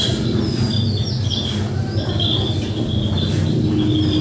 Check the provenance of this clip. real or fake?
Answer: real